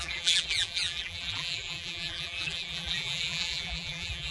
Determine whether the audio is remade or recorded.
remade